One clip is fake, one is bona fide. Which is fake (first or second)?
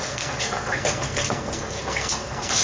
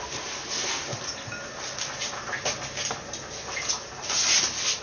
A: first